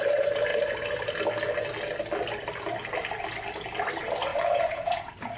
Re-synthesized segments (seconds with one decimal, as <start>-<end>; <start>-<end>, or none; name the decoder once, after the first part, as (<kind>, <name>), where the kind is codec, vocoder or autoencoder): 4.3-5.4 (vocoder, Vocos)